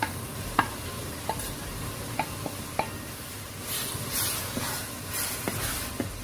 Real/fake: real